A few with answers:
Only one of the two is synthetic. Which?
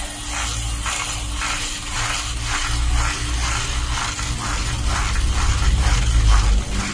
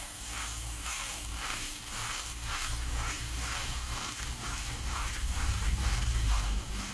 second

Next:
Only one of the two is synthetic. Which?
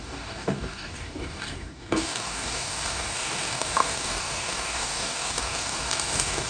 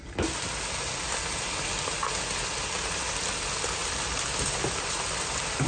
first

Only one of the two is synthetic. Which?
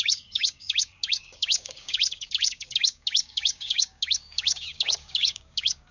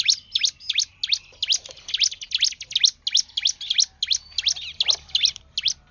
first